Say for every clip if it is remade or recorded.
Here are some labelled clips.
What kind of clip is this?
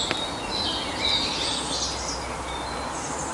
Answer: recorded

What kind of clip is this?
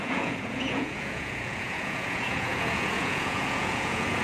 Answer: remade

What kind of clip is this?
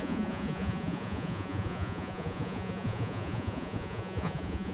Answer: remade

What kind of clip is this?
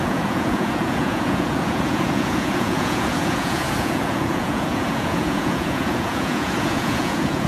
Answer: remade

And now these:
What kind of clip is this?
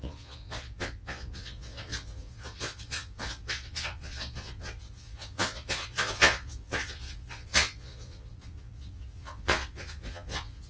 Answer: remade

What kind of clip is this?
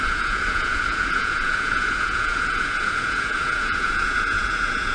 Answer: remade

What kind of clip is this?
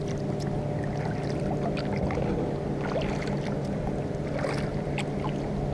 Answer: recorded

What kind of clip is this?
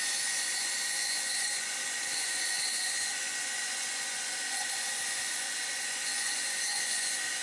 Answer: remade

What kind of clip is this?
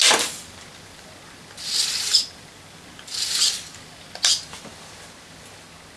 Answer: recorded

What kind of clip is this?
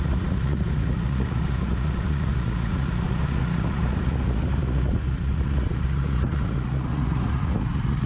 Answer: remade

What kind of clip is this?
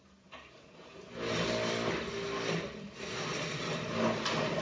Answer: recorded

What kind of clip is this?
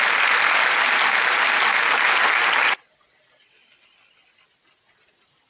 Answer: recorded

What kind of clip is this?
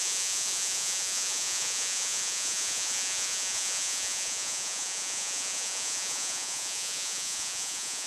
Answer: remade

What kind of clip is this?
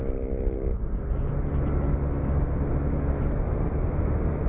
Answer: recorded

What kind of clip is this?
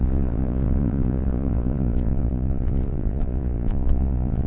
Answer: remade